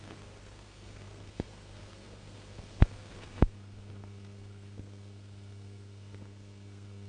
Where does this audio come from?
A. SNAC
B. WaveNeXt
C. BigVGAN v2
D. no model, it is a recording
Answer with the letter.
A